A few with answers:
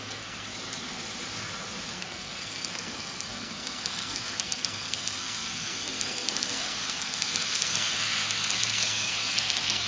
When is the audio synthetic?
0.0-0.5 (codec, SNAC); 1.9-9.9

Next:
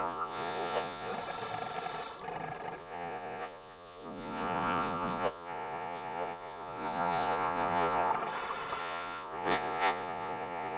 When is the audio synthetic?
0.0-1.1 (vocoder, Vocos); 2.8-8.1; 8.8-10.8

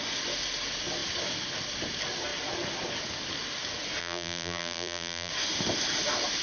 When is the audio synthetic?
4.0-5.3 (vocoder, BigVGAN v2)